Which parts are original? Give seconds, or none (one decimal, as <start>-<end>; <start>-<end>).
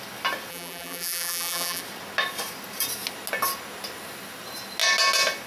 0.0-0.5; 1.8-5.5